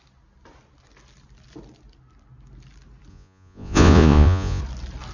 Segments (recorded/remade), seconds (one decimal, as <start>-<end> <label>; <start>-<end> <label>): 0.0-3.1 recorded; 3.1-4.6 remade; 4.6-5.1 recorded